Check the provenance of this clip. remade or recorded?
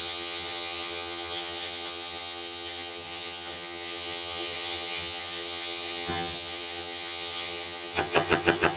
remade